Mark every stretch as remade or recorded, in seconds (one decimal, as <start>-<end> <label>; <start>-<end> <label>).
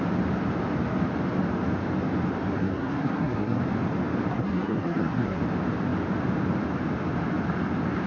0.0-2.6 recorded; 2.6-3.6 remade; 3.6-4.3 recorded; 4.3-5.4 remade; 5.4-8.1 recorded